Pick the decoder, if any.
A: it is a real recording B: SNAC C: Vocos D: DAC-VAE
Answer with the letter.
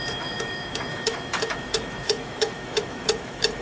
D